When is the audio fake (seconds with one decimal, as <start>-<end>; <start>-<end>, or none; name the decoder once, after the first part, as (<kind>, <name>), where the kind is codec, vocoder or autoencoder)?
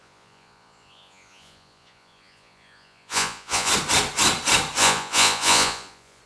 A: 0.0-3.7 (vocoder, Vocos); 4.8-6.2